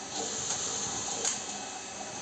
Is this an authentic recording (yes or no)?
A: yes